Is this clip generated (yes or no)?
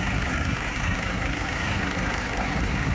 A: yes